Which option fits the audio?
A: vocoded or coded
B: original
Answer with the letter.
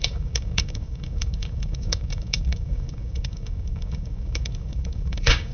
A